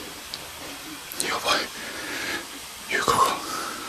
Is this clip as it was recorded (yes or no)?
yes